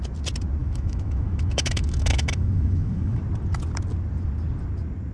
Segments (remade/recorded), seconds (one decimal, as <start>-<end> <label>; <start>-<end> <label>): 0.0-0.6 recorded; 0.6-3.2 remade; 3.2-5.1 recorded